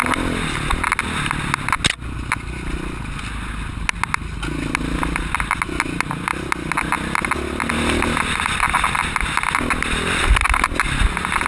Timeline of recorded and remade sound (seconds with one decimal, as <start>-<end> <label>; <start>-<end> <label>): 0.0-11.5 recorded